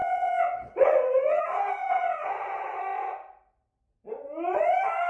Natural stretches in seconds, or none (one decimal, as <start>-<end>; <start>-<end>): 1.4-1.8; 2.3-5.1